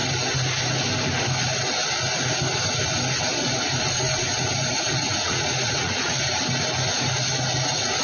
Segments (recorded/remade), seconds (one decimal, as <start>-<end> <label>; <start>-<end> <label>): 0.0-4.7 recorded; 4.7-6.4 remade; 6.4-8.0 recorded